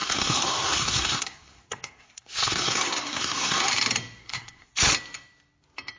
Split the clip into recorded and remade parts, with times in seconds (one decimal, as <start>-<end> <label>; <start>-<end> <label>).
0.0-3.6 remade; 3.6-4.2 recorded; 4.2-4.7 remade; 4.7-6.0 recorded